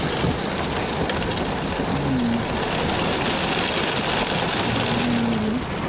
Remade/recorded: recorded